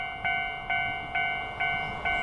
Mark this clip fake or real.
real